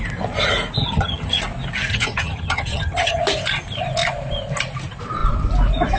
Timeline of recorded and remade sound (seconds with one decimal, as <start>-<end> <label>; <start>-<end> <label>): 0.0-0.8 recorded; 0.8-1.4 remade; 1.4-1.9 recorded; 1.9-3.2 remade; 3.2-6.0 recorded